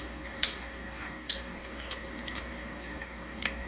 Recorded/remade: remade